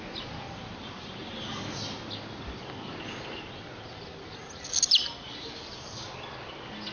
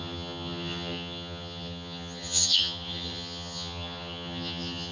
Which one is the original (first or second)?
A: first